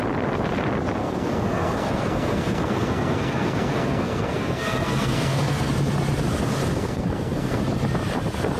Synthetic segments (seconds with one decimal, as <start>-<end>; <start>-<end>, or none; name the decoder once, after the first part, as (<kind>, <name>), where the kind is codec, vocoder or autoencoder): 1.0-5.7 (codec, SNAC); 6.7-7.6